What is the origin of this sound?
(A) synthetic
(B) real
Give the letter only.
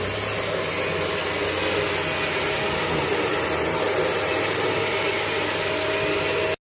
B